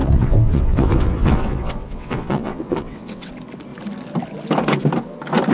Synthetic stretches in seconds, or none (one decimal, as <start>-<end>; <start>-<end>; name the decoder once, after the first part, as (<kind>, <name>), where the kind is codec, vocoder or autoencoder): 0.0-3.3 (vocoder, WaveNeXt)